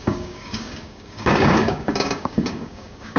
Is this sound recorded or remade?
remade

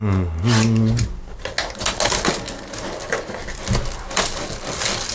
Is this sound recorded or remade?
recorded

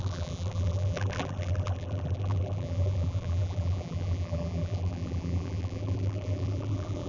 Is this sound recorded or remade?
remade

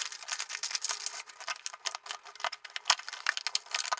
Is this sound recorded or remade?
recorded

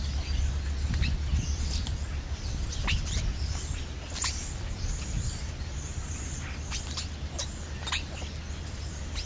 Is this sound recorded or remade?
recorded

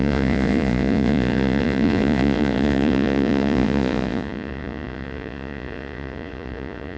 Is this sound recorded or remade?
remade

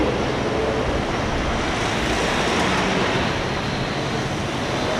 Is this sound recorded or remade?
recorded